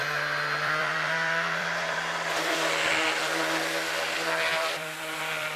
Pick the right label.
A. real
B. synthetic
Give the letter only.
B